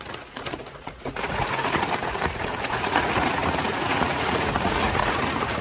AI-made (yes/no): yes